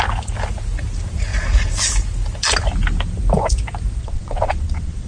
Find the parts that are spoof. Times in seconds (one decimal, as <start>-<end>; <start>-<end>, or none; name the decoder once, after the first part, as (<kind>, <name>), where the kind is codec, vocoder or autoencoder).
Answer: 4.0-5.1 (vocoder, WaveNeXt)